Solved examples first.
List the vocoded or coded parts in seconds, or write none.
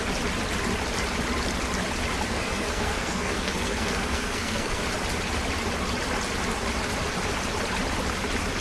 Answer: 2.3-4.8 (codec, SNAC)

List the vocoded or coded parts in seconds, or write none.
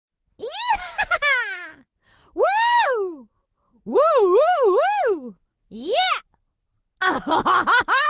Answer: 0.8-5.7 (codec, DAC)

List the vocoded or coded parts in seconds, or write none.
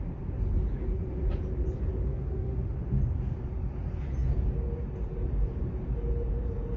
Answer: 2.1-3.0 (autoencoder, DAC-VAE)